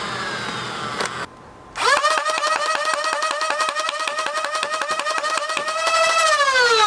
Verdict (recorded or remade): recorded